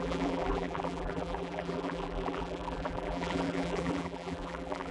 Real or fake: fake